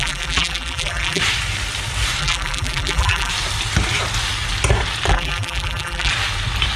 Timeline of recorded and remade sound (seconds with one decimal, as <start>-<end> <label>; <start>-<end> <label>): 0.0-1.2 remade; 1.2-2.2 recorded; 2.2-3.3 remade; 3.3-5.1 recorded; 5.1-6.1 remade; 6.1-6.8 recorded